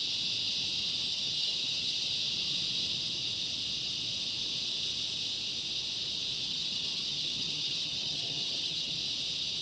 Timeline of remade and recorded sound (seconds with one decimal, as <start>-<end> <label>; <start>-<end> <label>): 0.0-1.1 recorded; 1.1-2.1 remade; 2.1-6.5 recorded; 6.5-8.9 remade; 8.9-9.6 recorded